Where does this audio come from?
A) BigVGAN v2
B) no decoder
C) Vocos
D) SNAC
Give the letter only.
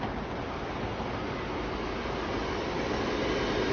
B